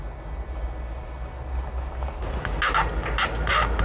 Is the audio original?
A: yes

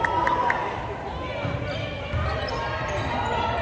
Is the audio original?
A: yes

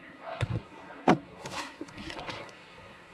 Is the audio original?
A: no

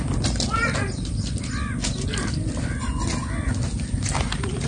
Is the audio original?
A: yes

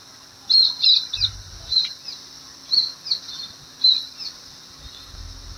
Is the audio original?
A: yes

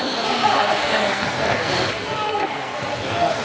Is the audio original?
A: no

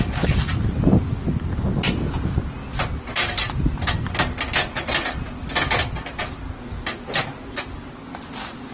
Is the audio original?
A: yes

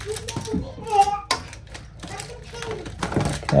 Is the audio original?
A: yes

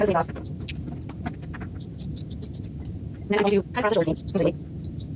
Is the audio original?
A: yes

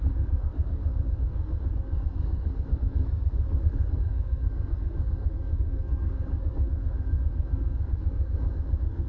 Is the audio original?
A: no